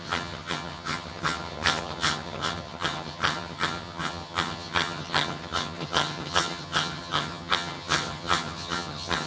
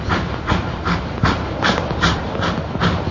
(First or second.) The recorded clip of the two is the second